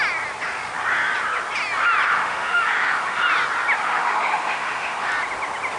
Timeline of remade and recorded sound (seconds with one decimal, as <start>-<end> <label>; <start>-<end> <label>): 0.0-2.1 recorded; 2.1-3.2 remade; 3.2-3.8 recorded; 3.8-5.1 remade; 5.1-5.8 recorded